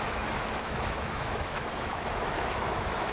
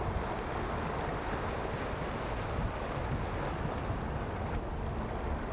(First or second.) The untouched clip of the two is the second